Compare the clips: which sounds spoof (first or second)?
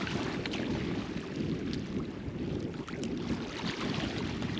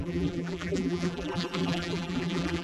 second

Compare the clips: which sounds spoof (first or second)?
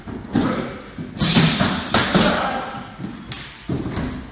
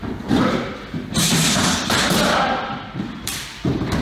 second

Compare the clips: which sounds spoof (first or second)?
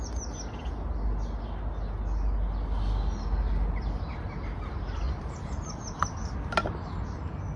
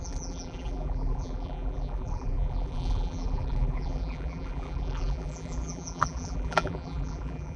second